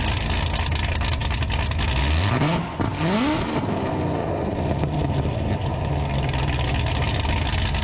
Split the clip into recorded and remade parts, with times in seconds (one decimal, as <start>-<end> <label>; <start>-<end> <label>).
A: 0.0-7.8 recorded